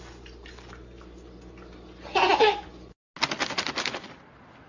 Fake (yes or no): no